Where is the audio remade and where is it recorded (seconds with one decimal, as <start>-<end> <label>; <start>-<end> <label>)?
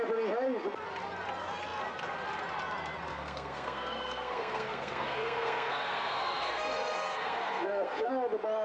0.0-3.1 recorded; 3.1-8.1 remade; 8.1-8.6 recorded